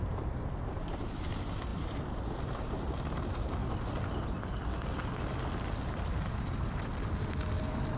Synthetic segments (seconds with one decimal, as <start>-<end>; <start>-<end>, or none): 0.0-3.6; 5.9-6.9; 7.6-8.0